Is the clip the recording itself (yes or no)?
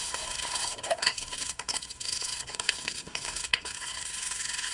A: no